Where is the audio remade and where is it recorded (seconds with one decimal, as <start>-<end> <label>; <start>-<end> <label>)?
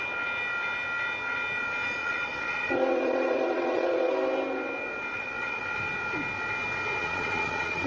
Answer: 0.0-2.0 recorded; 2.0-4.1 remade; 4.1-5.1 recorded; 5.1-5.6 remade; 5.6-7.0 recorded; 7.0-7.9 remade